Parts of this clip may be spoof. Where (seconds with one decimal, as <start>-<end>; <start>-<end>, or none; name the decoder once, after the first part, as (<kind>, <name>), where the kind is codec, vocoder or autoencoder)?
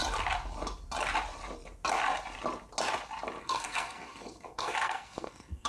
3.4-5.7 (codec, SNAC)